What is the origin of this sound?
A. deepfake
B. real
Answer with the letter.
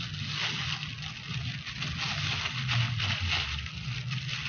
B